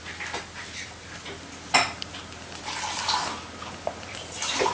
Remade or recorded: recorded